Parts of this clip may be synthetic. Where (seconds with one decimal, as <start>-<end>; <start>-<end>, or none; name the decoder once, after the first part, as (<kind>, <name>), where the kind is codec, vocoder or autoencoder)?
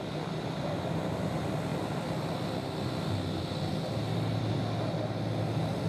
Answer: none